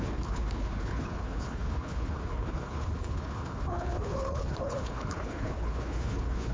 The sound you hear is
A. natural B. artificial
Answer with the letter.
B